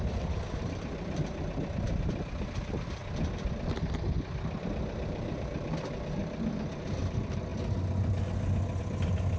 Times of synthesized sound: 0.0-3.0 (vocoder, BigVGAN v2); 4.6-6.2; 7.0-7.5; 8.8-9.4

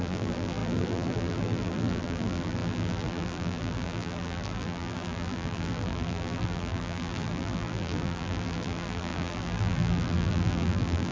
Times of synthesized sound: 0.0-11.1 (vocoder, BigVGAN v2)

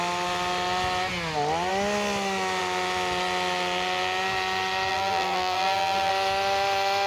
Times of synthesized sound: 4.9-6.1 (vocoder, BigVGAN v2)